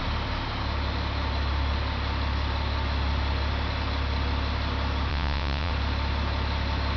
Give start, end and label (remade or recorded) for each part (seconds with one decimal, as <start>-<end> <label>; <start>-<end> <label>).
0.0-5.1 recorded; 5.1-5.7 remade; 5.7-7.0 recorded